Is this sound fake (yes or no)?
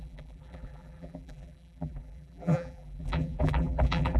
yes